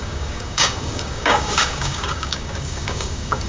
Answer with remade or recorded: remade